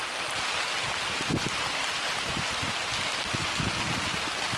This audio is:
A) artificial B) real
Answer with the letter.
B